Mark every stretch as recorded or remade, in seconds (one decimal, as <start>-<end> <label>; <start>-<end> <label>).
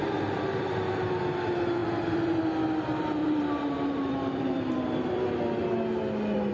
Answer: 0.0-1.8 recorded; 1.8-2.4 remade; 2.4-3.2 recorded; 3.2-5.4 remade; 5.4-6.5 recorded